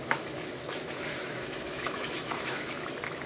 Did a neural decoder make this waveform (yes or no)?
yes